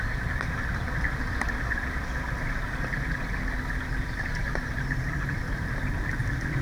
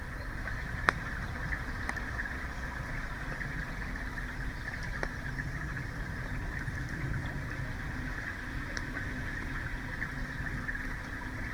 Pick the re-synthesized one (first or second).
second